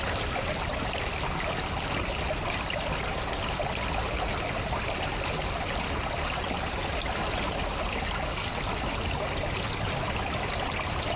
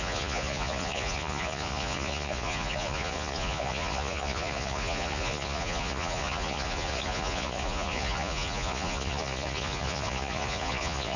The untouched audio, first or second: first